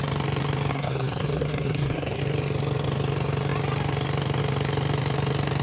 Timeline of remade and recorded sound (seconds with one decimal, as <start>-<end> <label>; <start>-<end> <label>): 0.0-0.7 recorded; 0.7-2.2 remade; 2.2-5.6 recorded